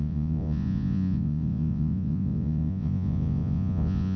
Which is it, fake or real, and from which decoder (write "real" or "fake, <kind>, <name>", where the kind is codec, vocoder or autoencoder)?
fake, vocoder, Vocos